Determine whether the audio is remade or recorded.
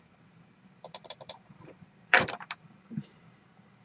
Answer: remade